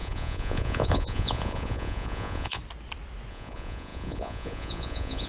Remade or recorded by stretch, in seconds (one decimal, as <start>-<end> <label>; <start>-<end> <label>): 0.0-2.6 remade; 2.6-3.3 recorded; 3.3-5.3 remade